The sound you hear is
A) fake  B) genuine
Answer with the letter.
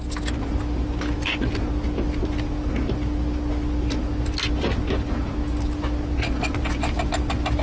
B